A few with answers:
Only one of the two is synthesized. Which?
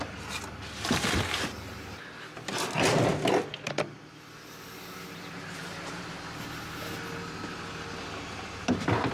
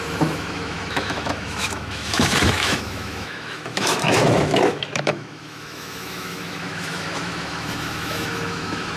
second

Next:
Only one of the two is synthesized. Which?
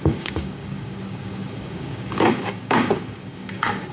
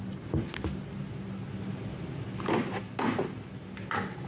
first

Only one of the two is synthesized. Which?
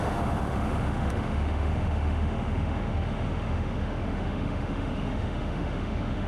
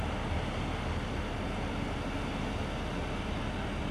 first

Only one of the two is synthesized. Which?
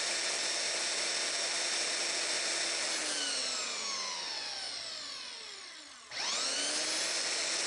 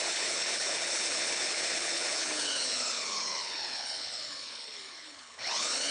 second